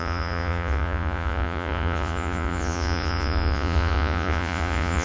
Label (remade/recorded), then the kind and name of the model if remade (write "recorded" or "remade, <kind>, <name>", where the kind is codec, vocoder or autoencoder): remade, vocoder, Vocos